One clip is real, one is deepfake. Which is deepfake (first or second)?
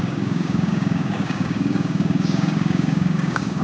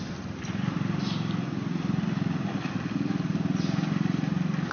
first